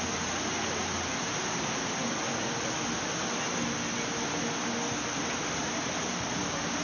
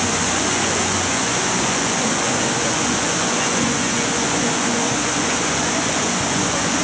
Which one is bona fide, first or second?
first